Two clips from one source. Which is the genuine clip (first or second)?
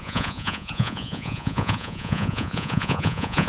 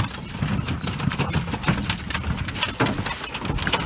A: second